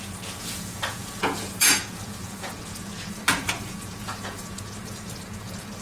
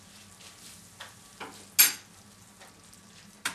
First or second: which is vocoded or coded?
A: first